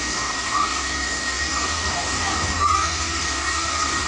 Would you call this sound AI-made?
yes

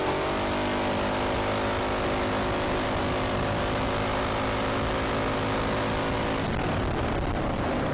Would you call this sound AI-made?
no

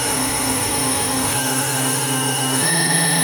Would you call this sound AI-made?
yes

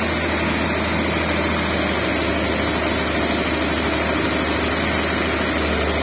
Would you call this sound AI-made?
no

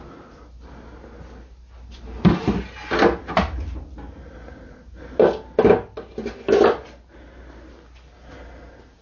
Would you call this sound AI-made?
no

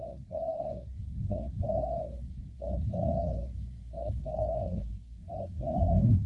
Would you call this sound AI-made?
yes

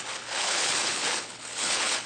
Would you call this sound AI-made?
yes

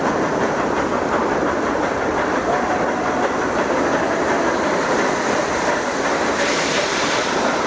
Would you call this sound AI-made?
yes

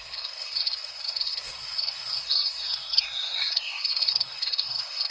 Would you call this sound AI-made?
yes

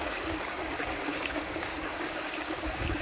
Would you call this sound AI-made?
yes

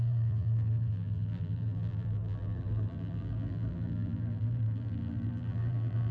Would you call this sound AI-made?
yes